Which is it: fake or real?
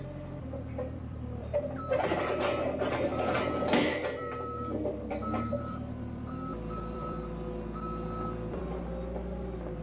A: fake